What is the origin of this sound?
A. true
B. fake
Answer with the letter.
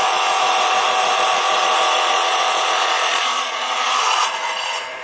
B